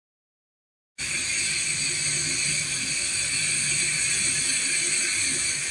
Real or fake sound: real